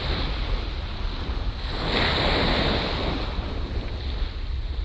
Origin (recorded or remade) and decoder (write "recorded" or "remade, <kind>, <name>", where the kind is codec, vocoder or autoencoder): recorded